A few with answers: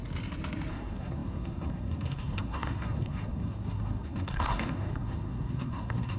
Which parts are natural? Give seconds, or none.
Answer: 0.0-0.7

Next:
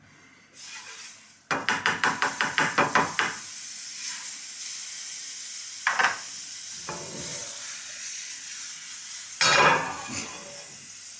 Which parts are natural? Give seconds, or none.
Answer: 0.0-7.4; 8.2-11.2